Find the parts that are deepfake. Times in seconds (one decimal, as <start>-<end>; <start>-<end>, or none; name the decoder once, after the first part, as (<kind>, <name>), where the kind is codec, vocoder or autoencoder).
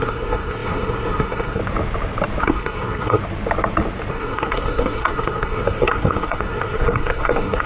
0.0-1.6 (codec, SNAC); 2.4-3.2; 4.1-7.7